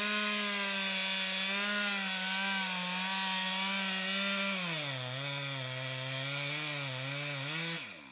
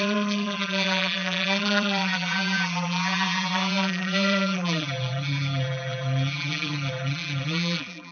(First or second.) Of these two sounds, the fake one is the second